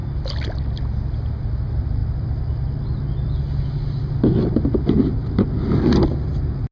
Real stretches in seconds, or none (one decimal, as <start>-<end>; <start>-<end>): 0.0-6.7